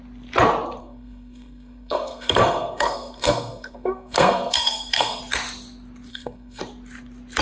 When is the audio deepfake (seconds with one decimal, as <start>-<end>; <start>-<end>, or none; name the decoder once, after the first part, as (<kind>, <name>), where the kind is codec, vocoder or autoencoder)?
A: 0.8-5.2 (codec, SNAC); 6.1-6.6